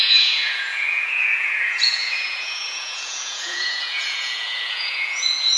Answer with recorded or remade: remade